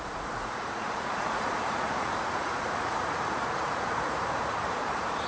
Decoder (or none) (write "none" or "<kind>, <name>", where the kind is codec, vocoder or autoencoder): vocoder, Vocos